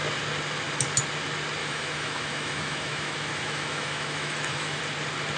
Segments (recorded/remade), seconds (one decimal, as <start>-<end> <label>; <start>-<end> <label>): 0.0-1.6 recorded; 1.6-4.8 remade; 4.8-5.4 recorded